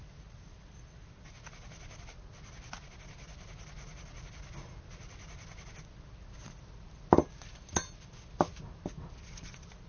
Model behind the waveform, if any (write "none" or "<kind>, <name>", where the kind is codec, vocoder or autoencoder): none